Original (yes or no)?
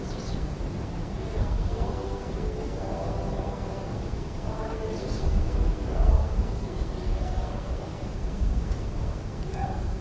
no